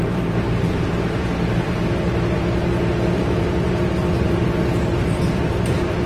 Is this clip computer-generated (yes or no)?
yes